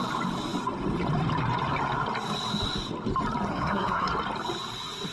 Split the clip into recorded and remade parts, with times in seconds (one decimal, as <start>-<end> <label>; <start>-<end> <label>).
0.0-3.5 recorded; 3.5-4.1 remade; 4.1-5.1 recorded